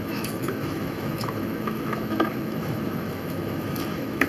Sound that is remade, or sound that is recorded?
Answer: remade